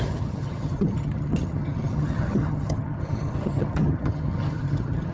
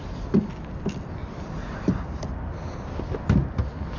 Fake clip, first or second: first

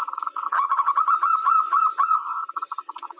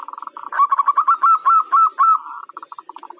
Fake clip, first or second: first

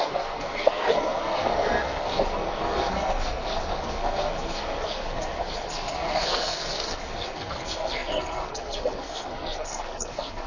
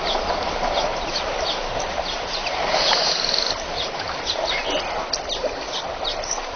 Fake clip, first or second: first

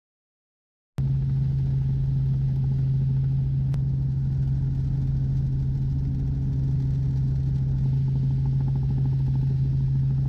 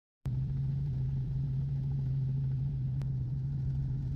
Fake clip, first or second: second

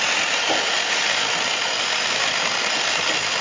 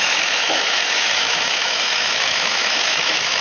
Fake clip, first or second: second